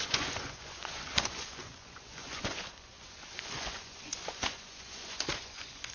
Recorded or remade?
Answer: remade